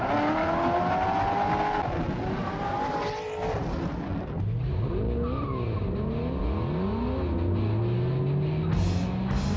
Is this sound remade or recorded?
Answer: recorded